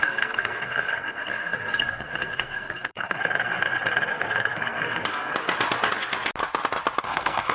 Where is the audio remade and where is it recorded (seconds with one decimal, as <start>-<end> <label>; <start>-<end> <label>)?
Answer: 0.0-3.5 remade; 3.5-4.1 recorded; 4.1-5.3 remade; 5.3-7.0 recorded; 7.0-7.5 remade

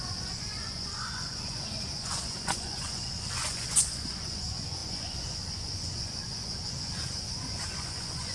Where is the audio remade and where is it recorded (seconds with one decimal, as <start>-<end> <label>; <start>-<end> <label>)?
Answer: 0.0-8.3 remade

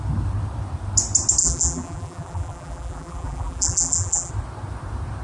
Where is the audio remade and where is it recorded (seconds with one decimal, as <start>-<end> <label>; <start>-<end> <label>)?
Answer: 0.0-1.4 recorded; 1.4-4.3 remade; 4.3-5.2 recorded

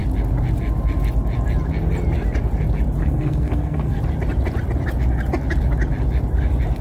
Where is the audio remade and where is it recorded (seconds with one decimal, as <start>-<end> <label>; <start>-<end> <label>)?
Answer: 0.0-3.0 recorded; 3.0-4.0 remade; 4.0-6.8 recorded

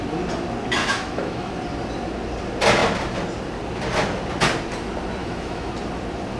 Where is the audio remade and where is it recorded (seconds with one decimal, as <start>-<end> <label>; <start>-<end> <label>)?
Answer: 0.0-0.8 recorded; 0.8-1.5 remade; 1.5-5.2 recorded; 5.2-5.7 remade; 5.7-6.4 recorded

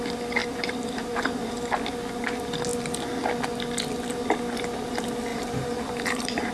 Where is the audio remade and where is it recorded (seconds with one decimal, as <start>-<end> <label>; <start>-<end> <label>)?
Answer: 0.0-0.4 recorded; 0.4-1.2 remade; 1.2-5.3 recorded; 5.3-6.5 remade

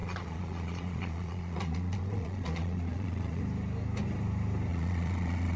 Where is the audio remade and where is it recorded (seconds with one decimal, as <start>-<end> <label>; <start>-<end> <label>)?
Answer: 0.0-3.4 remade; 3.4-4.7 recorded; 4.7-5.6 remade